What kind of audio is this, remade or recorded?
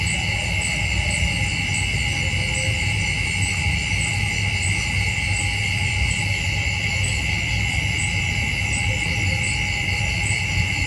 recorded